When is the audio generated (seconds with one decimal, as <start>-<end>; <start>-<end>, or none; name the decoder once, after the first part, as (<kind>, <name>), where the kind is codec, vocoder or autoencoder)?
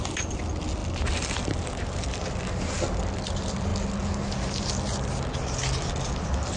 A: none